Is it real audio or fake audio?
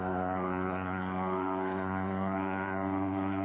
fake